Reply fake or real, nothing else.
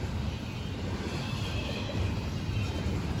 real